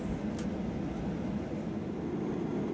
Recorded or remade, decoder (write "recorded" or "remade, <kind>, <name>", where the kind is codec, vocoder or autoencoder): recorded